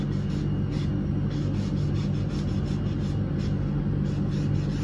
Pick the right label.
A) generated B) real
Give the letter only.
B